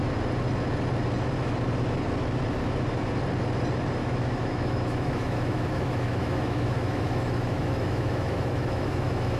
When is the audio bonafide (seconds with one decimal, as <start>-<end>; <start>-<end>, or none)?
0.0-4.0